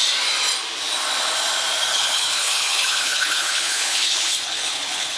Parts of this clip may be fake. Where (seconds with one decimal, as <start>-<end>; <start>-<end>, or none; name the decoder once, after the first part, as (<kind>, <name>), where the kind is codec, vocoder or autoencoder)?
1.9-5.2 (codec, HILCodec)